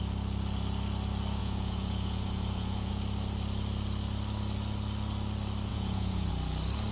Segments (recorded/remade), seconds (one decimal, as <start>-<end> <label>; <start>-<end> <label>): 0.0-1.4 recorded; 1.4-2.9 remade; 2.9-5.7 recorded; 5.7-6.3 remade; 6.3-6.9 recorded